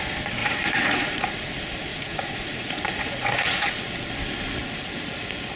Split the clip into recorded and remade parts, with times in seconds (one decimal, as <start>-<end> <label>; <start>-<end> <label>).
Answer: 0.0-0.4 recorded; 0.4-1.5 remade; 1.5-1.9 recorded; 1.9-3.8 remade; 3.8-5.6 recorded